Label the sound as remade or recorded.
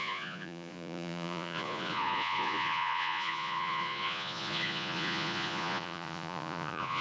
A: remade